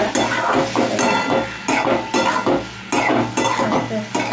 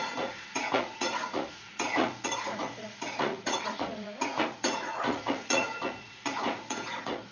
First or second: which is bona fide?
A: first